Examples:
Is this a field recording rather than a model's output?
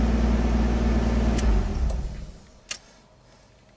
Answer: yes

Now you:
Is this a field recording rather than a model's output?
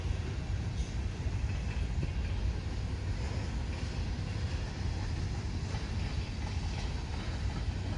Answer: yes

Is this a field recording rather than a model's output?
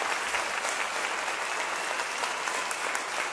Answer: yes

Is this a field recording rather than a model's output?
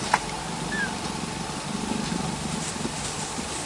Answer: yes